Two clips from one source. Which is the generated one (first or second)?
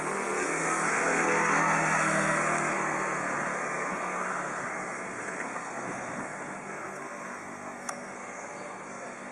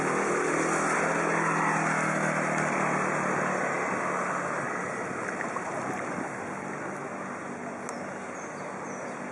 first